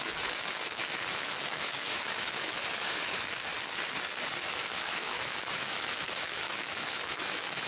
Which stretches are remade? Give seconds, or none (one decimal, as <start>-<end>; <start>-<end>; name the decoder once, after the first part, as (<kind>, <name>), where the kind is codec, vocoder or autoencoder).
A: 0.0-3.5 (autoencoder, DAC-VAE); 4.5-7.7